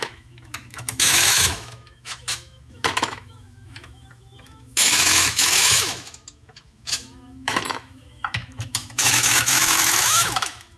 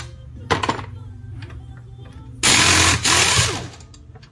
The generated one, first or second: first